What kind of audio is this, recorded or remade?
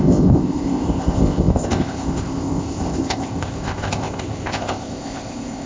remade